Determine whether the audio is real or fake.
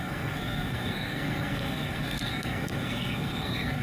fake